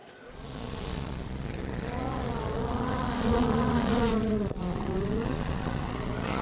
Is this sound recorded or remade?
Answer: remade